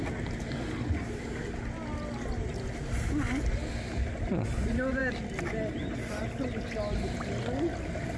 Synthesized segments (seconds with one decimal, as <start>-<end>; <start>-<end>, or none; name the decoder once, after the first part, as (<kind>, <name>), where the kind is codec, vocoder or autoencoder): none